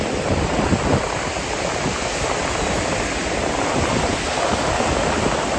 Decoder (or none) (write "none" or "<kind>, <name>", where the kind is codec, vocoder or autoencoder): none